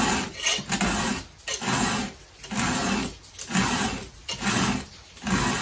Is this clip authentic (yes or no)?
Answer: yes